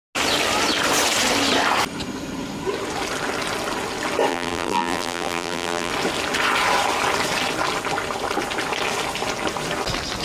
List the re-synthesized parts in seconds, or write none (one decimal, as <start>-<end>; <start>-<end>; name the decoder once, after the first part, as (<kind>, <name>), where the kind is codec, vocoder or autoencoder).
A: 4.3-5.9 (vocoder, BigVGAN v2)